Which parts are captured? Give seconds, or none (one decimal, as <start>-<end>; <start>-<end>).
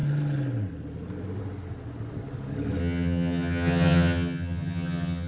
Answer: 0.0-2.8